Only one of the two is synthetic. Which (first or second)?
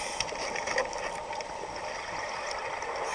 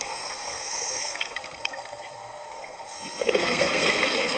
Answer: second